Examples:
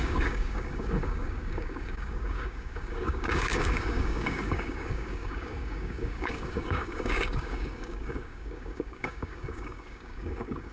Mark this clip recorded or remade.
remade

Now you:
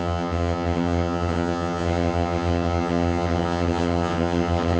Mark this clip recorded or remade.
remade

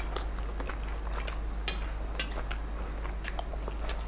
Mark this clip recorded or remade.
recorded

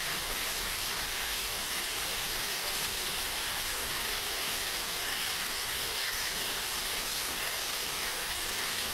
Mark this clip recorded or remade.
remade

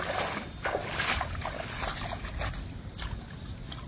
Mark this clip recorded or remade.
recorded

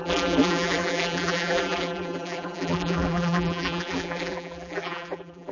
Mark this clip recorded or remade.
remade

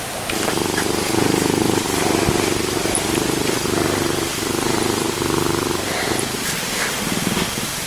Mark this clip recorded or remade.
recorded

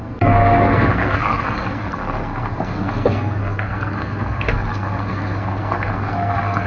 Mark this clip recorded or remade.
remade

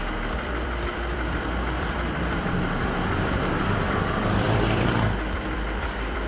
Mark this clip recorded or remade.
remade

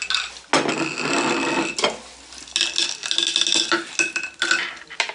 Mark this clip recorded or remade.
recorded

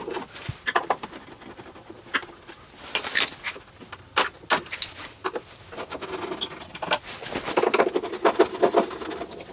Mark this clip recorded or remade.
recorded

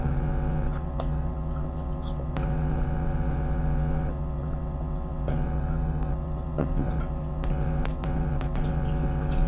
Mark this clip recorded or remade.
remade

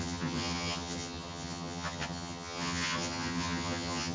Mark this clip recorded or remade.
remade